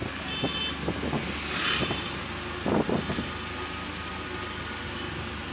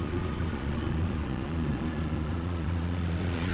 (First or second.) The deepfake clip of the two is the second